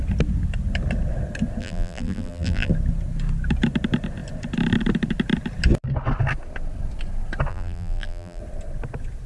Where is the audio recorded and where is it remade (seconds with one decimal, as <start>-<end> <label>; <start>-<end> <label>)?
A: 0.0-1.6 recorded; 1.6-2.7 remade; 2.7-7.5 recorded; 7.5-8.4 remade; 8.4-9.3 recorded